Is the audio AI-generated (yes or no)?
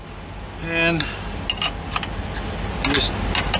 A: no